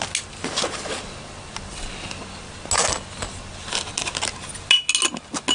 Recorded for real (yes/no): yes